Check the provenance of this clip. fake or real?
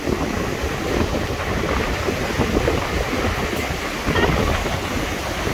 real